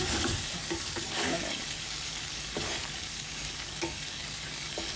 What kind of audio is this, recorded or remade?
remade